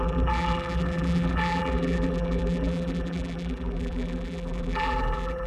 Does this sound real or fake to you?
fake